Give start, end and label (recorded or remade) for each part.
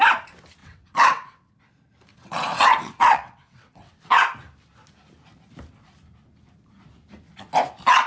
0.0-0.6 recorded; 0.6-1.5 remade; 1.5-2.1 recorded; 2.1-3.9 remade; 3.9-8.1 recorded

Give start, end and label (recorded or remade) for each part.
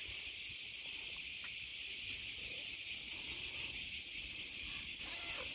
0.0-5.5 recorded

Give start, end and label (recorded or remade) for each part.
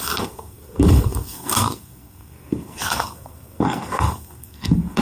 0.0-5.0 remade